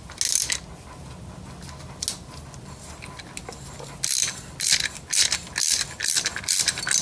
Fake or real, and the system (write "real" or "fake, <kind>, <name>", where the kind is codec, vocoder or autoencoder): real